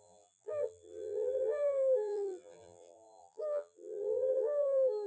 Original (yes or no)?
no